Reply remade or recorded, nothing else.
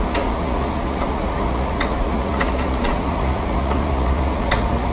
remade